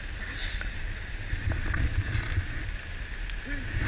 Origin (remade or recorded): recorded